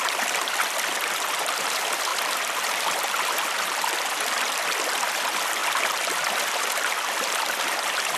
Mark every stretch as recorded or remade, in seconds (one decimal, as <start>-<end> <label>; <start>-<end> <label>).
0.0-2.1 remade; 2.1-3.6 recorded; 3.6-5.6 remade; 5.6-6.6 recorded; 6.6-8.2 remade